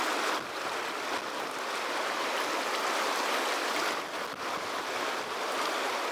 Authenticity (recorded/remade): recorded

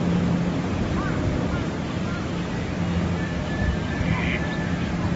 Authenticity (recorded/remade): recorded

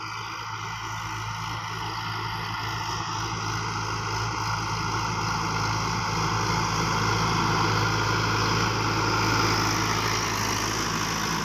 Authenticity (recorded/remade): recorded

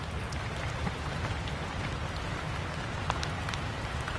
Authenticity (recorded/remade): recorded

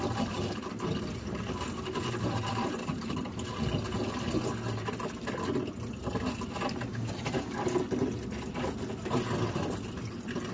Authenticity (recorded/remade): recorded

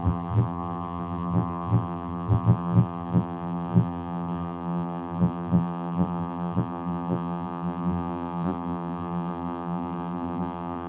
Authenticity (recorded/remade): remade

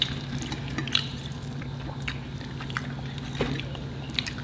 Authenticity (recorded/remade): remade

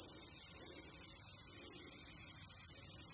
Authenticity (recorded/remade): recorded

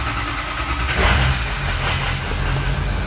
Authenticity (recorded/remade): recorded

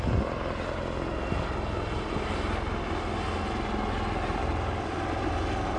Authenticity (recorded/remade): recorded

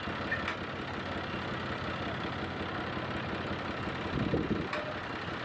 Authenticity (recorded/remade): recorded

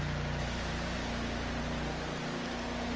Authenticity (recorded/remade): recorded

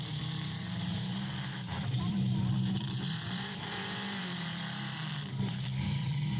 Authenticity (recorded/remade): remade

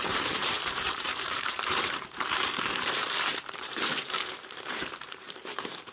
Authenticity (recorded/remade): remade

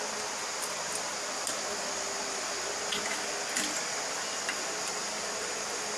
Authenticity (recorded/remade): recorded